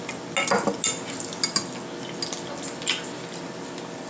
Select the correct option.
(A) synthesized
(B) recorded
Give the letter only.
B